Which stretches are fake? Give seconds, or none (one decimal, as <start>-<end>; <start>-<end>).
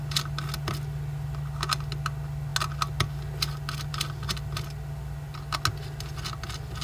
none